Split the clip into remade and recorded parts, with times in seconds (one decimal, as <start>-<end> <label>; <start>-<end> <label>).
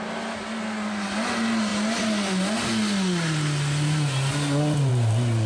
0.0-5.5 recorded